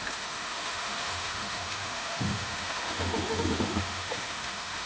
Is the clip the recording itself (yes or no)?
no